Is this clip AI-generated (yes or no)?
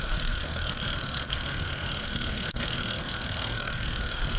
yes